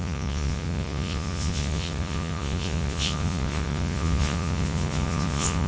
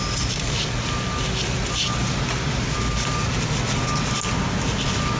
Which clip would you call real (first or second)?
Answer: second